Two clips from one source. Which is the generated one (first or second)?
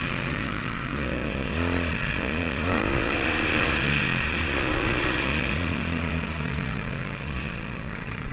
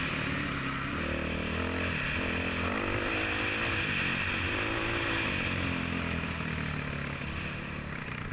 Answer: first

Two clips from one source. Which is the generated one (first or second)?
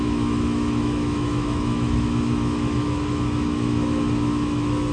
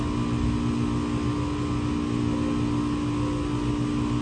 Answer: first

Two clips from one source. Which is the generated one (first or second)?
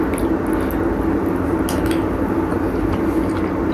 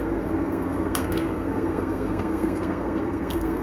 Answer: second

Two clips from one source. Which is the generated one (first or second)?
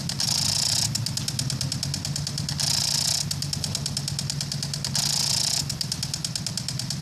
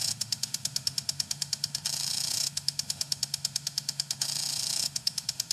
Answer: second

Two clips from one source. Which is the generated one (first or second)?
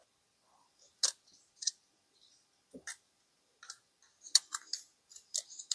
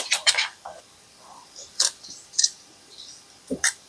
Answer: second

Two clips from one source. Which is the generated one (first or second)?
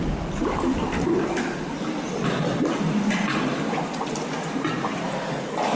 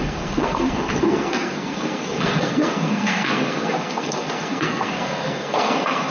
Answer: second